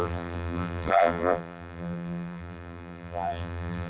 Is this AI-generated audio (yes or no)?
yes